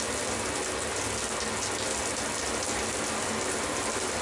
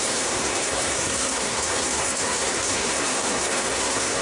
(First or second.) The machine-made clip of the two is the second